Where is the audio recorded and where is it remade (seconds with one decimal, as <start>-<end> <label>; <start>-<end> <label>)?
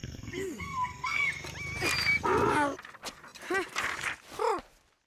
0.0-1.3 remade; 1.3-5.1 recorded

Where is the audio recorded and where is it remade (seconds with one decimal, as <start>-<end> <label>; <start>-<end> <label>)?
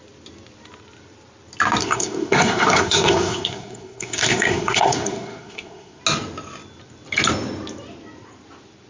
0.0-1.8 recorded; 1.8-6.0 remade; 6.0-8.9 recorded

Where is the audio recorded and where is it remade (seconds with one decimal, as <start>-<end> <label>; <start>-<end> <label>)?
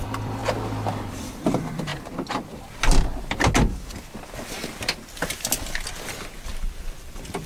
0.0-0.4 remade; 0.4-1.1 recorded; 1.1-1.9 remade; 1.9-6.0 recorded; 6.0-7.5 remade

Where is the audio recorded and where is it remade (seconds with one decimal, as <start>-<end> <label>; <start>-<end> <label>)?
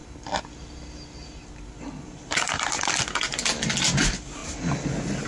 0.0-5.3 recorded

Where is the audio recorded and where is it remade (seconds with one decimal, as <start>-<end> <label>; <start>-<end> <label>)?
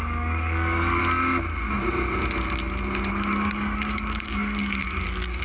0.0-1.0 remade; 1.0-3.1 recorded; 3.1-5.4 remade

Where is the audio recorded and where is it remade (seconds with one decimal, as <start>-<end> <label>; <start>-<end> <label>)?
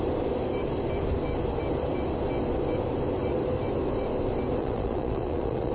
0.0-4.6 recorded; 4.6-5.7 remade